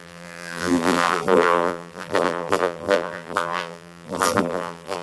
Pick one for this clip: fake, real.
fake